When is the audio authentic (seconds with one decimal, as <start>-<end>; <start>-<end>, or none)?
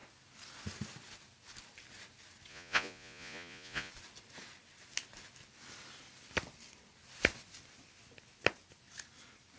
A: 0.0-2.5; 3.9-9.6